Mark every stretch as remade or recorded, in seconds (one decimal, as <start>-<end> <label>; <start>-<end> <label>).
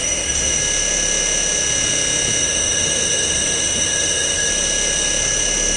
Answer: 0.0-0.6 remade; 0.6-2.4 recorded; 2.4-4.5 remade; 4.5-5.8 recorded